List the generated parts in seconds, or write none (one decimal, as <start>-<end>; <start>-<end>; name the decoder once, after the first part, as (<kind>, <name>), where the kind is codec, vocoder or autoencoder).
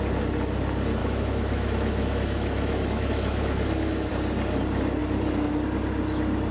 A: 1.0-4.1 (autoencoder, DAC-VAE)